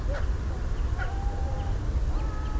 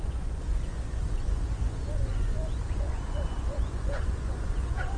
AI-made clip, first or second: second